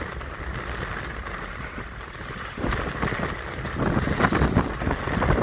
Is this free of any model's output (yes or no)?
yes